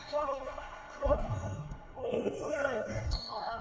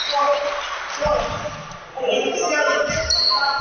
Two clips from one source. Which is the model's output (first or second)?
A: first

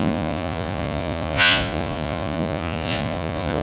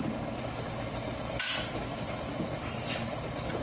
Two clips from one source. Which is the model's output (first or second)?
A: first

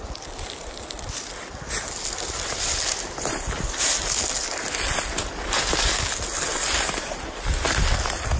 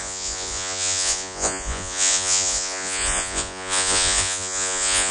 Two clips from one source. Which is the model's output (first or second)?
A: second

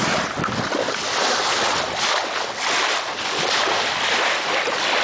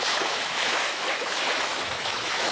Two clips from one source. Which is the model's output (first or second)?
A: second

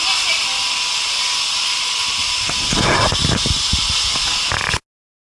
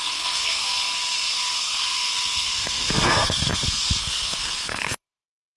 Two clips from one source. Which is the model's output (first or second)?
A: second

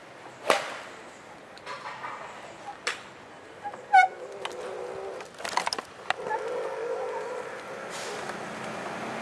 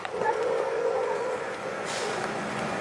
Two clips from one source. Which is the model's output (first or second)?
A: second